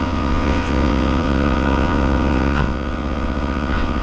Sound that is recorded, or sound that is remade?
remade